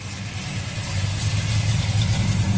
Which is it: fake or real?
real